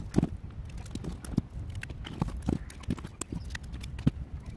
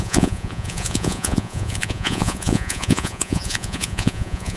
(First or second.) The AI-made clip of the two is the second